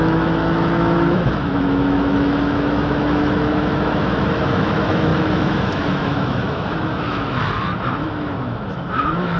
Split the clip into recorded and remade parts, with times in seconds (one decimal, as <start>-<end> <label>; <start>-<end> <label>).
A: 0.0-9.4 remade